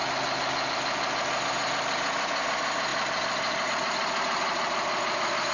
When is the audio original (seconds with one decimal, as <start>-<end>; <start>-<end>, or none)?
0.0-5.5